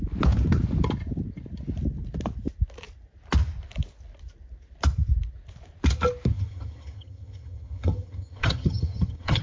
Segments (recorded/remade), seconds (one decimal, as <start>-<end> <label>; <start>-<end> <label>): 0.0-6.3 recorded; 6.3-9.4 remade